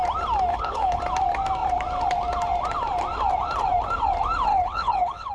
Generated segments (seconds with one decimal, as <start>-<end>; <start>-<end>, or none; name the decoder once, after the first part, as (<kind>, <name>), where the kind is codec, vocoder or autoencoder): 0.5-1.0 (codec, HILCodec); 4.5-5.3